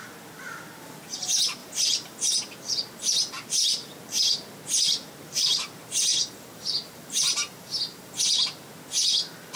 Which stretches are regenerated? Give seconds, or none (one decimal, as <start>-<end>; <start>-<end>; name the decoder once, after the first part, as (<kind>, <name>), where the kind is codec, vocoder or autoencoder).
1.6-2.3 (vocoder, BigVGAN v2); 6.1-8.2